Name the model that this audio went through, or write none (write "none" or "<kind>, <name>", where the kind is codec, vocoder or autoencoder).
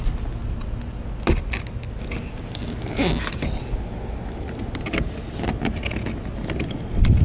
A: none